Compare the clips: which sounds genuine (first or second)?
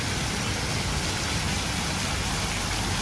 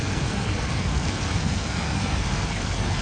first